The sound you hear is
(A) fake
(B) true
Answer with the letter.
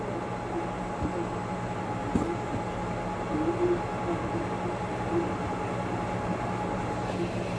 B